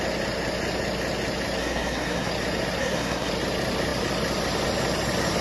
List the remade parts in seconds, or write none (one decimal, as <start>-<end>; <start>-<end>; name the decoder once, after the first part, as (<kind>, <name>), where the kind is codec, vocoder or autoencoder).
1.6-2.3 (codec, SNAC); 2.8-3.3